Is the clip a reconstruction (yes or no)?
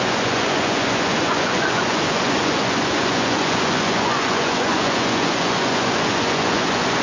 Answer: yes